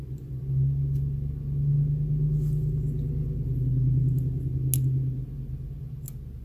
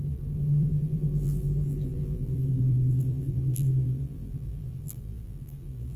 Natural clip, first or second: first